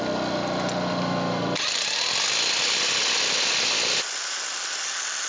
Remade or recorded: recorded